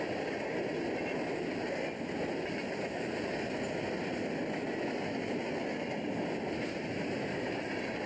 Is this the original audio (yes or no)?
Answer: yes